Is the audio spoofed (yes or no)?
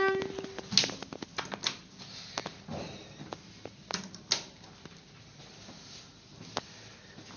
no